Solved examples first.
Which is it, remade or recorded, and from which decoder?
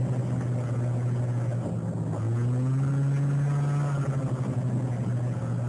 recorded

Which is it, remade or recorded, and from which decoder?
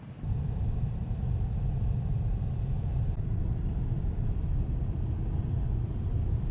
remade, vocoder, BigVGAN v2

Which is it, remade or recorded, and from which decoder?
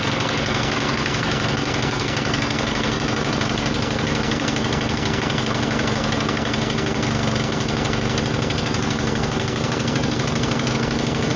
remade, codec, SNAC